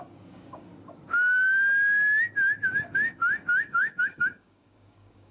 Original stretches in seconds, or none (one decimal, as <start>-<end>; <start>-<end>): 0.7-3.6